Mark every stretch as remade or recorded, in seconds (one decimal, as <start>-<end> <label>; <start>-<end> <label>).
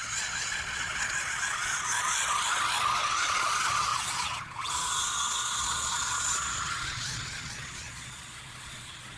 0.0-1.9 remade; 1.9-3.4 recorded; 3.4-9.2 remade